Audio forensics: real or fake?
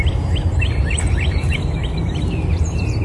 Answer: fake